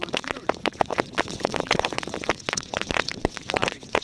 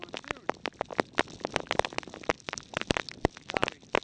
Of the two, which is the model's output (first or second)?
first